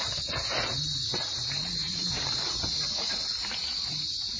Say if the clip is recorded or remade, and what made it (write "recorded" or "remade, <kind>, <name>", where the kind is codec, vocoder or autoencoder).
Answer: recorded